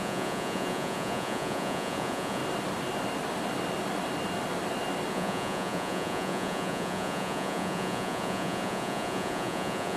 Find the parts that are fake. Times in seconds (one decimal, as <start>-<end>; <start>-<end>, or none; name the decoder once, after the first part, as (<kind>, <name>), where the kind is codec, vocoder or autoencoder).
0.0-2.4 (vocoder, Vocos); 5.1-10.0